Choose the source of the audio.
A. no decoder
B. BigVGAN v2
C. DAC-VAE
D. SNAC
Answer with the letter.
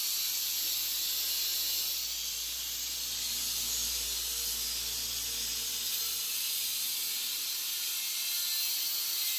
A